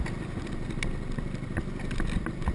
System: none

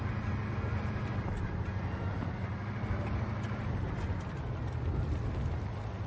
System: none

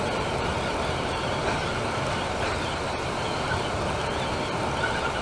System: none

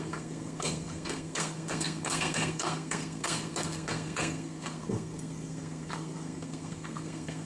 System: codec, SNAC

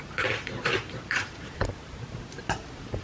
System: vocoder, BigVGAN v2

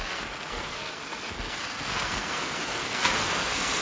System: codec, SNAC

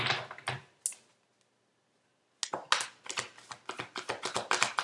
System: none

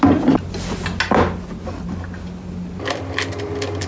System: none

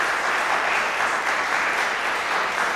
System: none